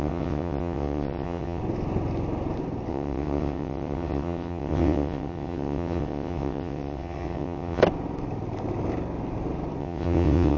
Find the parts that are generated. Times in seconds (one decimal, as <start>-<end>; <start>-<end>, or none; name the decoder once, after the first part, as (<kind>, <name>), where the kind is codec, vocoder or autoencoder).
0.0-1.6 (vocoder, WaveNeXt); 2.9-7.8; 9.8-10.6